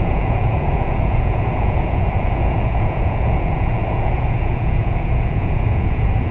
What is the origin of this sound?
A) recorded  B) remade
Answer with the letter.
B